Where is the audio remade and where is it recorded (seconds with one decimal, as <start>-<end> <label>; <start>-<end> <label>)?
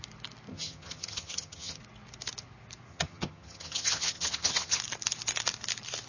0.0-0.5 recorded; 0.5-1.8 remade; 1.8-2.9 recorded; 2.9-4.8 remade; 4.8-6.1 recorded